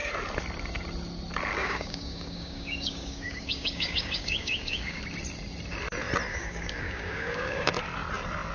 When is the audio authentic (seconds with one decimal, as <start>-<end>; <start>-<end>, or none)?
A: 0.0-1.6; 5.0-6.3; 7.7-8.5